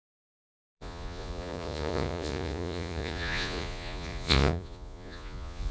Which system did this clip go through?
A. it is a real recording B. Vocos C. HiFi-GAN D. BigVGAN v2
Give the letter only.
B